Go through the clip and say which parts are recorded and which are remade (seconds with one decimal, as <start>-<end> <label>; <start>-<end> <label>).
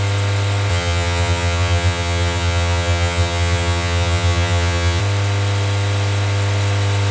0.0-0.7 recorded; 0.7-5.0 remade; 5.0-7.1 recorded